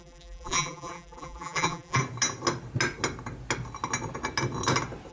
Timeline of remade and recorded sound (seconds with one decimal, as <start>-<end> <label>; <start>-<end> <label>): 0.0-2.0 remade; 2.0-5.1 recorded